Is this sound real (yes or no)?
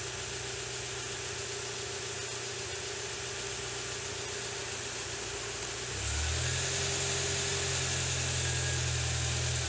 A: yes